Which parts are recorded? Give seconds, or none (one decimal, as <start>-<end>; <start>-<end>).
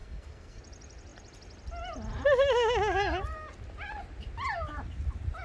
0.6-5.4